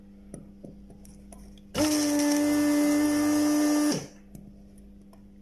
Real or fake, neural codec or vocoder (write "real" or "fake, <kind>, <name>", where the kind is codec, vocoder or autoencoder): real